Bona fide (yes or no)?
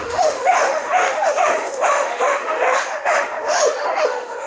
no